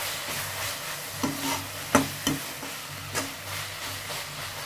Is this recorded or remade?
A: recorded